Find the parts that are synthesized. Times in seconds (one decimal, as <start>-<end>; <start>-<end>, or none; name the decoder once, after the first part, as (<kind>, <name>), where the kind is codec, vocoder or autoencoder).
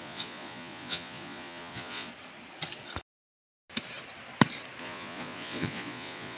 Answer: 0.0-2.1 (vocoder, Vocos); 4.8-6.4